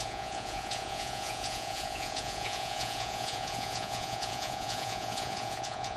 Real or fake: fake